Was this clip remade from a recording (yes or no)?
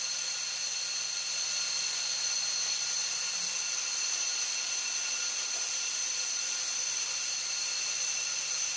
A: no